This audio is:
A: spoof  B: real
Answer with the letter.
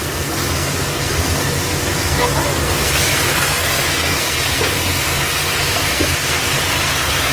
A